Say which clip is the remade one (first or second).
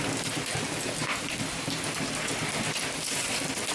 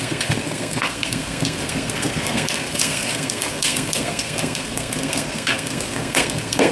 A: second